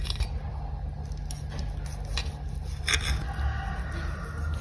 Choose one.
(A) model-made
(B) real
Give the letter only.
B